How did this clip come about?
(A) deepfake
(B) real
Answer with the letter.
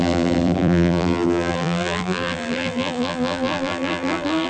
A